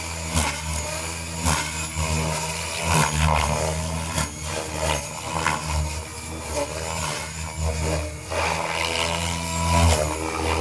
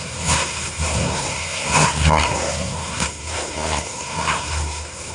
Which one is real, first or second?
first